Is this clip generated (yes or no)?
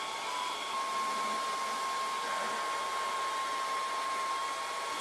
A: no